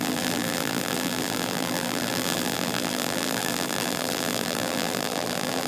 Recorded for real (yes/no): no